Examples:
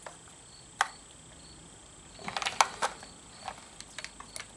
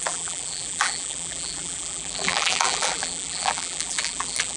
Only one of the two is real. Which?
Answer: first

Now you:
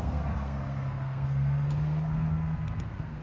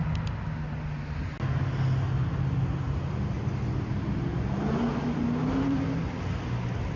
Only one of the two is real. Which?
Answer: second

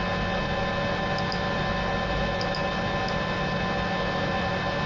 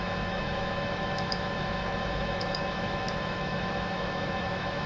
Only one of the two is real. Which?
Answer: first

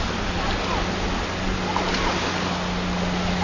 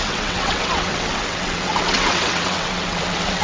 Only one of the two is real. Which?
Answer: first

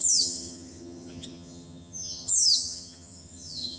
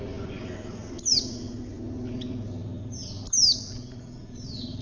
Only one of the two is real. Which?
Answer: second